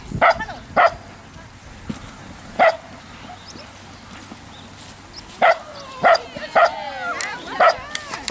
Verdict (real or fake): real